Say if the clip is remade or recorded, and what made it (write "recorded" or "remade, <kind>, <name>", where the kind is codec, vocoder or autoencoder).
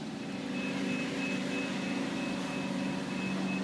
recorded